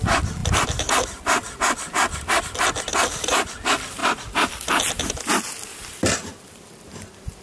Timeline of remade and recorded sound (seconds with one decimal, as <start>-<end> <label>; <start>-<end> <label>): 0.0-7.4 recorded